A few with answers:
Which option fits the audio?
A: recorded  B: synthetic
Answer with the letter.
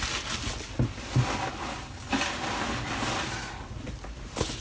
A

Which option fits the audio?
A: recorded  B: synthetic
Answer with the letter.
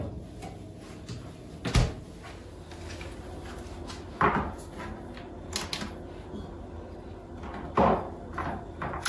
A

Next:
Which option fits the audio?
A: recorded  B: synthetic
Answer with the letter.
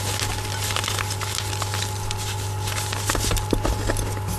A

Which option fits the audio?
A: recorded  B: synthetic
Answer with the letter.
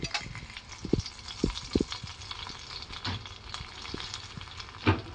A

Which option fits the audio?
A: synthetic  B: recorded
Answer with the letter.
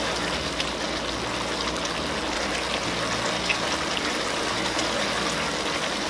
B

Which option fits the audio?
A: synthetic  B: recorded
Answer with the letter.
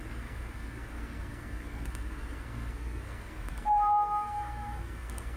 A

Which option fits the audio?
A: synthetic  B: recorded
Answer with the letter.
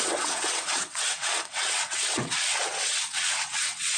A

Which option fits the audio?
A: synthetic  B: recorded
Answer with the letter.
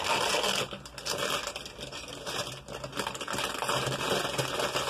B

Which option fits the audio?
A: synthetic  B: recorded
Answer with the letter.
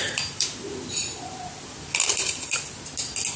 B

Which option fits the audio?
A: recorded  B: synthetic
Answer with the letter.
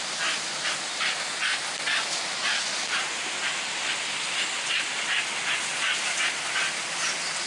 A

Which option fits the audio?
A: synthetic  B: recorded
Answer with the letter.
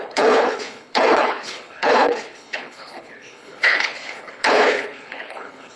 A